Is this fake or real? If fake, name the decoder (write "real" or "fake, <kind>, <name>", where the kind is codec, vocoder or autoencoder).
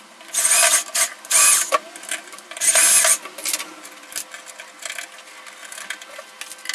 real